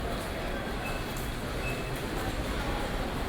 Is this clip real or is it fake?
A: real